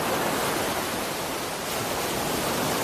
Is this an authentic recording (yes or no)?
yes